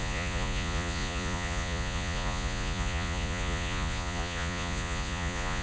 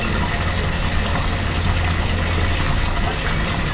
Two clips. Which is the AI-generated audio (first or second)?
first